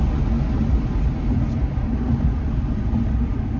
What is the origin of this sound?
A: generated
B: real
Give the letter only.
B